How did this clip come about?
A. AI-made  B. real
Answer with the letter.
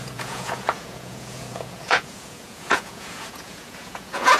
A